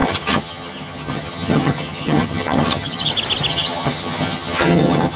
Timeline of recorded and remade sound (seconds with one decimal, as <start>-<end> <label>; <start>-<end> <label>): 0.0-3.1 remade; 3.1-3.5 recorded; 3.5-5.2 remade